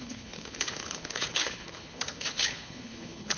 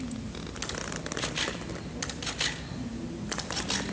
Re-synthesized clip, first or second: first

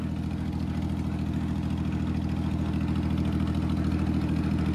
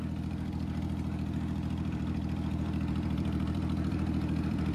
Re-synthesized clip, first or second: second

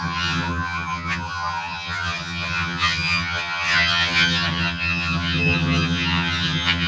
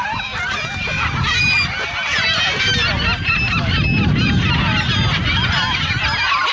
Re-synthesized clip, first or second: first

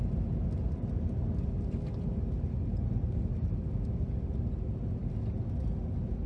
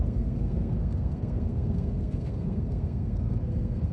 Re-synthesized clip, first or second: second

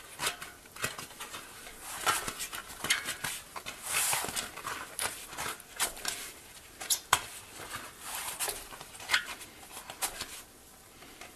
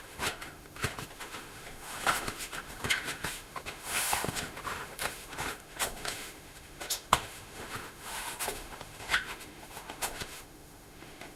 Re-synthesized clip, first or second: second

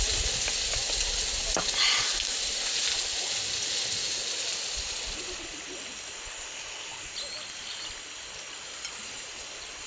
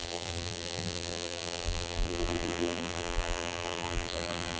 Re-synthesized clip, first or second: second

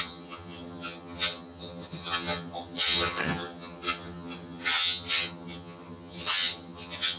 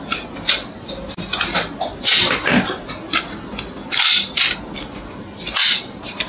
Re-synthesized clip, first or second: first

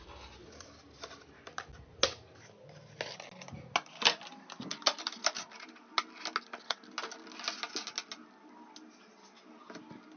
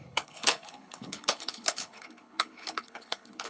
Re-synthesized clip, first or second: second